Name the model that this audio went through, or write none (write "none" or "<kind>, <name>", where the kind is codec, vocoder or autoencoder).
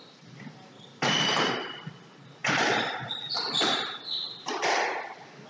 none